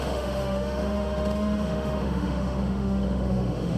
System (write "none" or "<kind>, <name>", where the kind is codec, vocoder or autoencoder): autoencoder, DAC-VAE